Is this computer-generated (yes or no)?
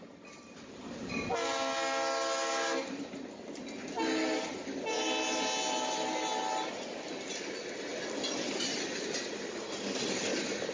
no